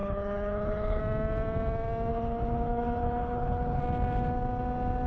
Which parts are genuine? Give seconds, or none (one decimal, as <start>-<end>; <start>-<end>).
1.0-2.1; 3.8-5.1

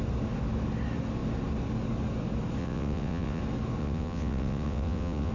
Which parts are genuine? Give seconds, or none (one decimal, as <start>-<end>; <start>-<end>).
0.0-2.6; 3.4-3.8

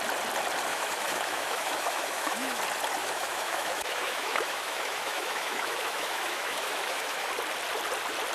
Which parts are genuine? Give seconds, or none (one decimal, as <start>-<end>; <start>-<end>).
0.0-0.7; 2.6-3.0; 7.3-8.3

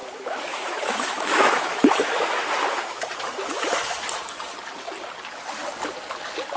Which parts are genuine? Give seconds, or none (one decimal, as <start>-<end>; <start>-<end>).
4.0-6.6

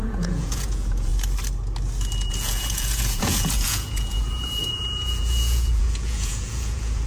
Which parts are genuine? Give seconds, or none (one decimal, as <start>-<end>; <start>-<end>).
1.1-2.3

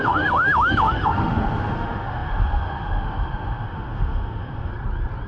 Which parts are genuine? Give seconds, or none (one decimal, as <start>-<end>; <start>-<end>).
4.7-5.3